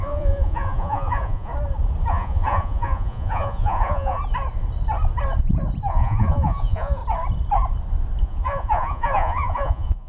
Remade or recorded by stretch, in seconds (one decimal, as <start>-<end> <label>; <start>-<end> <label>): 0.0-1.5 remade; 1.5-2.1 recorded; 2.1-4.2 remade; 4.2-5.9 recorded; 5.9-7.0 remade; 7.0-8.2 recorded; 8.2-10.1 remade